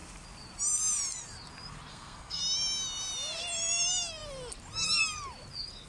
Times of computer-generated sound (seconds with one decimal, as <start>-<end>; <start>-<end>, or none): 1.9-2.4